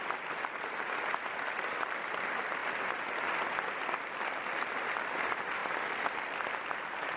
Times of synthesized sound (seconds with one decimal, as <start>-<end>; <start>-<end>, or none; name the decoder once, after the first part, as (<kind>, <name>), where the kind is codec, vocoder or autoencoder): 0.0-7.2 (vocoder, BigVGAN v2)